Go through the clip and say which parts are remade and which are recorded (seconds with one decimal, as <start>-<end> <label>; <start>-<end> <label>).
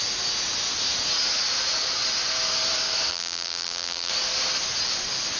0.0-3.1 recorded; 3.1-4.1 remade; 4.1-5.4 recorded